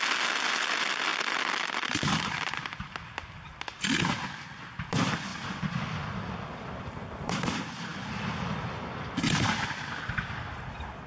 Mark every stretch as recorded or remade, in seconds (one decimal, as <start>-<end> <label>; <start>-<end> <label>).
0.0-11.1 recorded